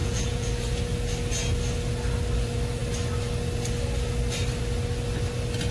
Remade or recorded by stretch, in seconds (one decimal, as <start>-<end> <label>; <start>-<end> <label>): 0.0-0.5 remade; 0.5-5.7 recorded